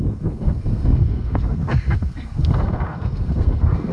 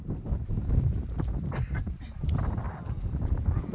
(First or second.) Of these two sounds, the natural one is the second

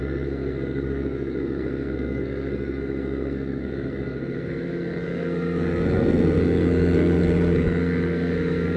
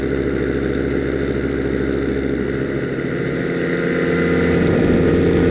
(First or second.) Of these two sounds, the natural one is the second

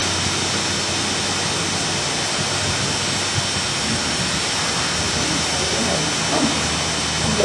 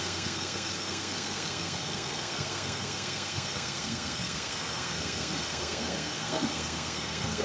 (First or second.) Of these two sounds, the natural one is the first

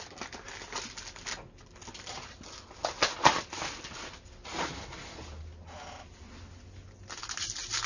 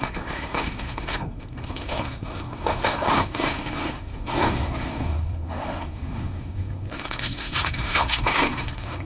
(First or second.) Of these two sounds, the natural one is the first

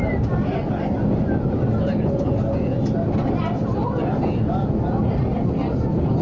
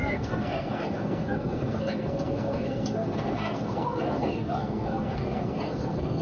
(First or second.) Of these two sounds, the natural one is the first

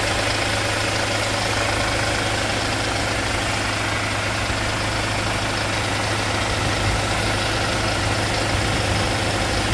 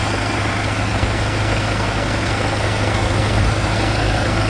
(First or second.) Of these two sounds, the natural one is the first